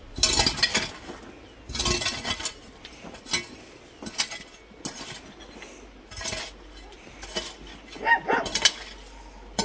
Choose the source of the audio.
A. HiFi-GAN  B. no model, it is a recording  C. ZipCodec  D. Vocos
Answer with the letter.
B